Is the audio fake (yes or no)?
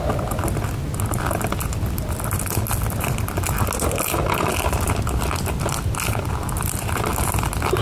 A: no